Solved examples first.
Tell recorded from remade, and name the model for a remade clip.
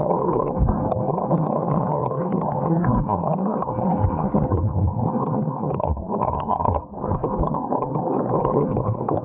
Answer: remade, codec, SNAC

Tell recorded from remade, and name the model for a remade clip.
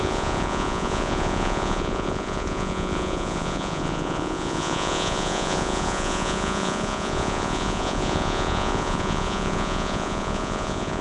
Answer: remade, vocoder, Vocos